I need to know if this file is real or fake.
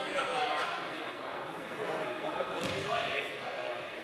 fake